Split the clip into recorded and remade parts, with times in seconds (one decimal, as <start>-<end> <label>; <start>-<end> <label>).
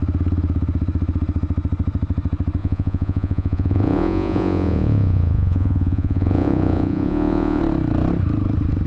0.0-2.6 recorded; 2.6-7.6 remade; 7.6-8.9 recorded